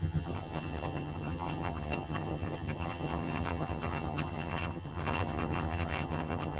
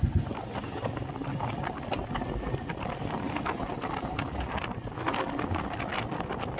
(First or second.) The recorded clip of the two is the second